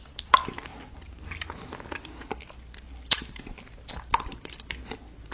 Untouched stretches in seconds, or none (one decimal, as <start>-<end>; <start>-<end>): 0.0-5.3